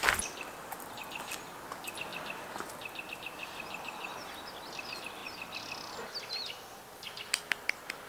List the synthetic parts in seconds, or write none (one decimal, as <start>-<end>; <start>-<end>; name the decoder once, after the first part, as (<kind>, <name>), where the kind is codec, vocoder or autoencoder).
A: none